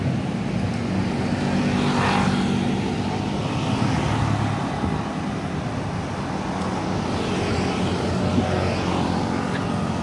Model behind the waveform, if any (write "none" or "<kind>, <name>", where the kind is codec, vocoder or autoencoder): none